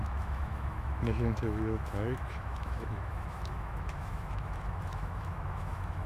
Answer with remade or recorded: remade